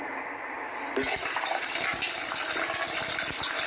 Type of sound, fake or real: real